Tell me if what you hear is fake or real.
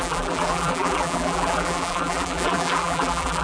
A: fake